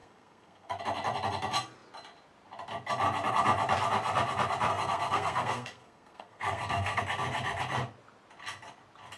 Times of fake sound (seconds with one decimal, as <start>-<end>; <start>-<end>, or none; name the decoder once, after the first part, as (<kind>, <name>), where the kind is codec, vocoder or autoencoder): 0.0-0.8 (codec, SNAC); 4.7-7.0